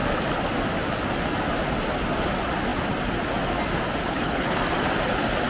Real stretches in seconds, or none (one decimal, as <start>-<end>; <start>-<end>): 0.0-4.0; 4.6-5.5